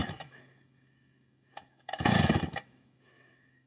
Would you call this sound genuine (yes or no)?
no